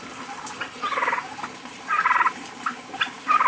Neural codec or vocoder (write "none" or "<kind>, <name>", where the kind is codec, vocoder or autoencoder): vocoder, BigVGAN v2